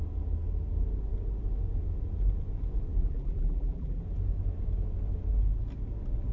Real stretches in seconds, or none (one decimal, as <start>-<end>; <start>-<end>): 0.0-3.0; 4.0-6.3